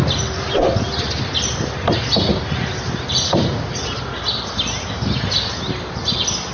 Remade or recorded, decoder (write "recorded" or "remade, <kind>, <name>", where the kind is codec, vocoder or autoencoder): recorded